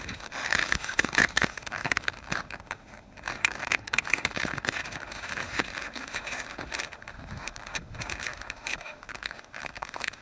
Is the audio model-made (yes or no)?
yes